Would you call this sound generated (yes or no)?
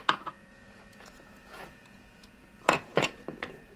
yes